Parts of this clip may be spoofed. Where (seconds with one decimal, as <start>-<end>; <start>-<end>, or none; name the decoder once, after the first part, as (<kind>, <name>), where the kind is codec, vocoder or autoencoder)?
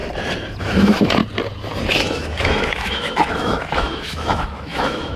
0.6-1.2 (autoencoder, DAC-VAE); 1.9-5.2